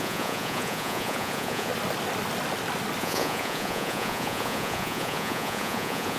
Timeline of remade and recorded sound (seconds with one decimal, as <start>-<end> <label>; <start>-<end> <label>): 0.0-1.7 remade; 1.7-3.0 recorded; 3.0-6.2 remade